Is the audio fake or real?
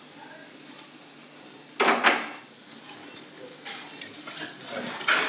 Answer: real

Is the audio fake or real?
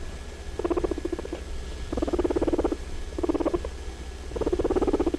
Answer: real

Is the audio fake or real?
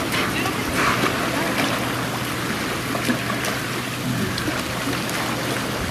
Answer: real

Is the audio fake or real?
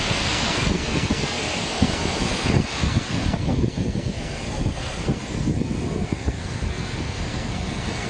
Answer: fake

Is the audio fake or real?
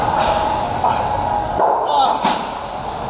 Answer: real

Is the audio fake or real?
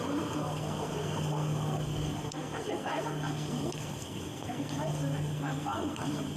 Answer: fake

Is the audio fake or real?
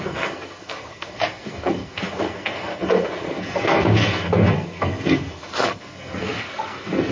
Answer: fake